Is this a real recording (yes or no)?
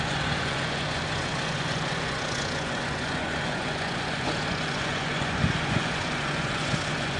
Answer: no